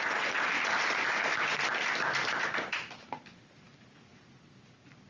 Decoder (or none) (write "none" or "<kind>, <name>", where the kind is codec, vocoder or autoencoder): none